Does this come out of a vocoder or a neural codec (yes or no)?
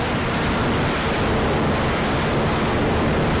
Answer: no